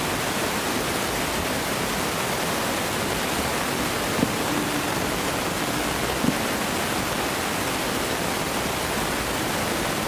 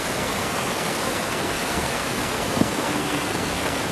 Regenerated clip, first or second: second